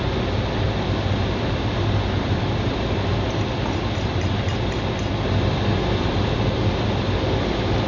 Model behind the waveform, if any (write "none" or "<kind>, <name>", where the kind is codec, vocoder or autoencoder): none